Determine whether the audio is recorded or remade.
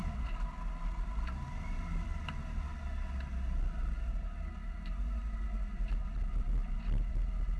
recorded